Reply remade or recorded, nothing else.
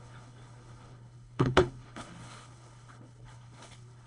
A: remade